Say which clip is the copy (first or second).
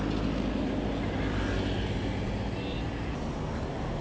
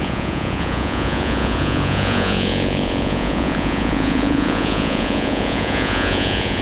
second